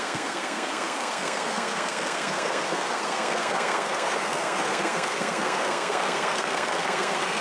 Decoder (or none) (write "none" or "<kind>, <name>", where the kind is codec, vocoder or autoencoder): codec, SNAC